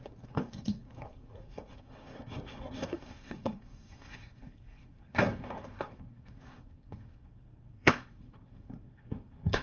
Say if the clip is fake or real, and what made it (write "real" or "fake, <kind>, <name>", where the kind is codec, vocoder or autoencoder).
fake, codec, SNAC